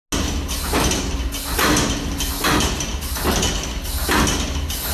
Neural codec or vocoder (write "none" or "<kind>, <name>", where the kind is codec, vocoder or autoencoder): none